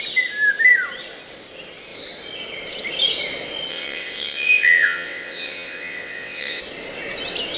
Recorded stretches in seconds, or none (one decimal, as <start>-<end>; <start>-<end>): 0.0-3.7; 6.6-7.6